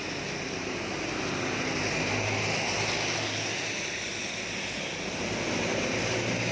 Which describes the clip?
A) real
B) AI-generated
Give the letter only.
A